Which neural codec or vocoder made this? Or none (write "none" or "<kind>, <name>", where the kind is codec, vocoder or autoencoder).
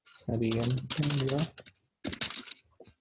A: none